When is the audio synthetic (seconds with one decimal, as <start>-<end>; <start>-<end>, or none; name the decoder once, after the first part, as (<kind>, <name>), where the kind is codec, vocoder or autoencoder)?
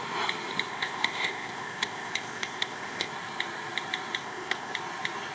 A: 0.7-3.1 (codec, ZipCodec); 4.2-4.7